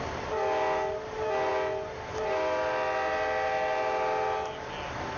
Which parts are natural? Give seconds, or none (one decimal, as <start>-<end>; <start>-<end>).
0.0-5.2